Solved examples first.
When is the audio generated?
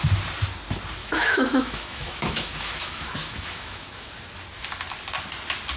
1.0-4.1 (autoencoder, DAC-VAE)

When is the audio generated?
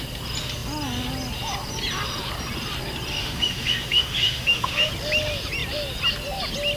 3.2-4.9 (autoencoder, DAC-VAE)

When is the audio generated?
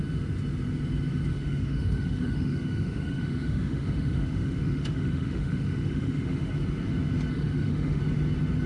1.3-6.5 (autoencoder, DAC-VAE); 7.3-8.0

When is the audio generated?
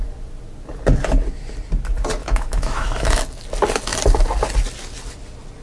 2.2-3.2 (autoencoder, DAC-VAE)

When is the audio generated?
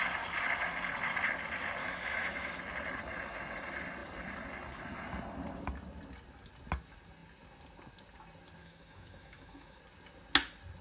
1.8-2.6 (autoencoder, DAC-VAE); 8.6-9.8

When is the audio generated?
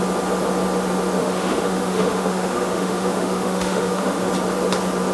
1.2-4.3 (autoencoder, DAC-VAE)